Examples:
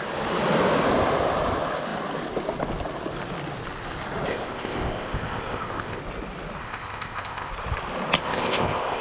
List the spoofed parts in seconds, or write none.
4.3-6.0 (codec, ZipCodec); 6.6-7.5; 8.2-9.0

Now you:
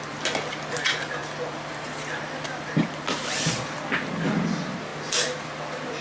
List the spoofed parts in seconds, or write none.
none